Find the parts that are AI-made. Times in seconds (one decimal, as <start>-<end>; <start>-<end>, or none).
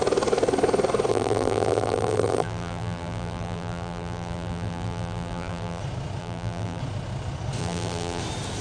1.1-5.8; 6.2-6.8; 7.6-8.2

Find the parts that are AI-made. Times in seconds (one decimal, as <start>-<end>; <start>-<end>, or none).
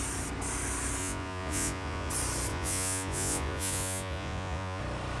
1.0-2.1; 2.5-4.8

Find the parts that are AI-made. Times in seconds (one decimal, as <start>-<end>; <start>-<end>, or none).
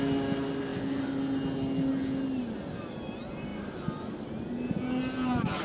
none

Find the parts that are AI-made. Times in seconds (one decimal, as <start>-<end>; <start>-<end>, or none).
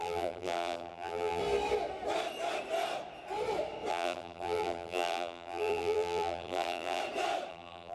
0.0-1.4; 3.9-7.0; 7.5-7.9